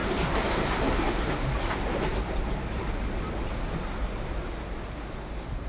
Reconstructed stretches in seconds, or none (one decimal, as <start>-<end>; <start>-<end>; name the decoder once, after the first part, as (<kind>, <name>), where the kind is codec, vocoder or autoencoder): 0.0-1.7 (vocoder, BigVGAN v2)